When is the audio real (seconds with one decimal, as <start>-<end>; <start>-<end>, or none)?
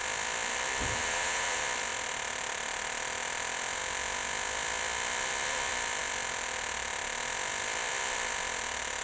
0.0-0.5; 3.8-5.3